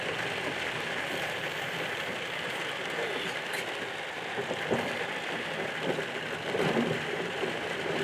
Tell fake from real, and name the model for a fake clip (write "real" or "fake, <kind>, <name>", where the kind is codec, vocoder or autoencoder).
real